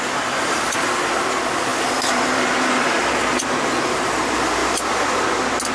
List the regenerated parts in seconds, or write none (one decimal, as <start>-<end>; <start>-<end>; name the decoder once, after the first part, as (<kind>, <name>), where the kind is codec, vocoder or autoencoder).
1.7-2.4 (vocoder, BigVGAN v2); 4.6-5.2